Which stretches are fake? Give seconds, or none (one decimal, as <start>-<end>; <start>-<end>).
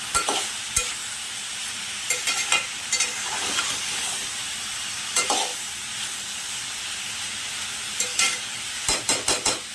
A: 3.1-4.2; 8.1-8.6